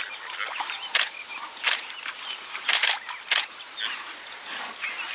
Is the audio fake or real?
real